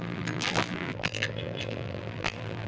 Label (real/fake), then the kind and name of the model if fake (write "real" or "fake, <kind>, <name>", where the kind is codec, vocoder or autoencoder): fake, vocoder, BigVGAN v2